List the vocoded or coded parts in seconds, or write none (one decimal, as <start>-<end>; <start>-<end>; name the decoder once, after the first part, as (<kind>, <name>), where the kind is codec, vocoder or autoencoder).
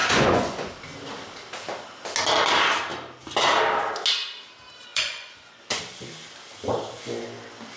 0.0-0.7 (vocoder, Vocos); 4.9-5.8